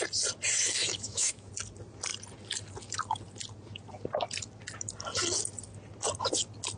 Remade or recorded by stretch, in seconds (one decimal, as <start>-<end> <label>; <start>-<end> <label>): 0.0-0.8 recorded; 0.8-1.5 remade; 1.5-6.8 recorded